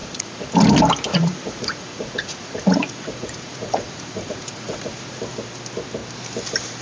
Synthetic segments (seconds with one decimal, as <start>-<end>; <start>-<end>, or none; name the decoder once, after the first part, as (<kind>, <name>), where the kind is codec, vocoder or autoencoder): 0.0-0.5 (vocoder, Vocos); 1.1-5.2